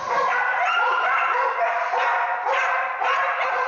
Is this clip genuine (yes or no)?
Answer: yes